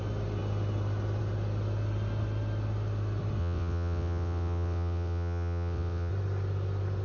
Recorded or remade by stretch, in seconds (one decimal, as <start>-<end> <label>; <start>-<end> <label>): 0.0-3.4 recorded; 3.4-6.1 remade; 6.1-7.0 recorded